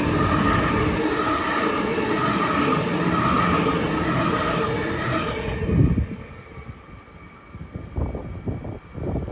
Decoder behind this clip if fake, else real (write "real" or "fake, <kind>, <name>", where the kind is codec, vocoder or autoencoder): real